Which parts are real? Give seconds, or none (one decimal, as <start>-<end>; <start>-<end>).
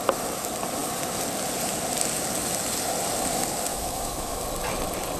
0.0-3.7; 4.4-5.2